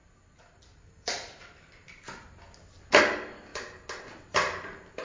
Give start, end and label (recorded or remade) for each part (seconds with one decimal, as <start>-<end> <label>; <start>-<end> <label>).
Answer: 0.0-5.0 recorded